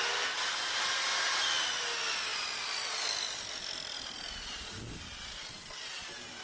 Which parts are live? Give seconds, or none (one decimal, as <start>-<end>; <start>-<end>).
0.0-6.4